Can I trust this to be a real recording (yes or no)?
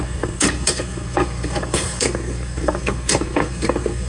no